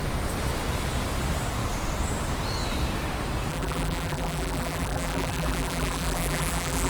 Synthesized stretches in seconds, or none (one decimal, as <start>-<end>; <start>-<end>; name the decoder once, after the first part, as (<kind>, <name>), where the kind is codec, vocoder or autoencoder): 3.5-6.9 (vocoder, BigVGAN v2)